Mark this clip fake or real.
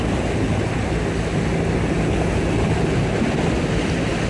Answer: real